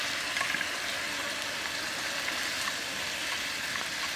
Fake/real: real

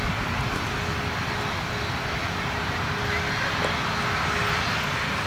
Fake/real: real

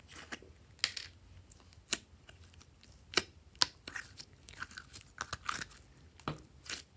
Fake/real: real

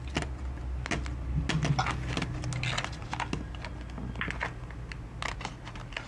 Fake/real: real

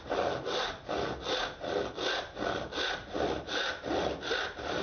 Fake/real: real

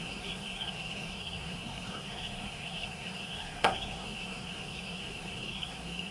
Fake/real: fake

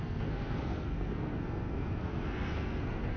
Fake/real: fake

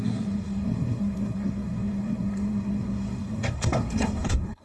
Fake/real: fake